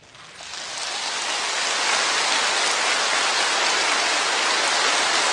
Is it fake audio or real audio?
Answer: real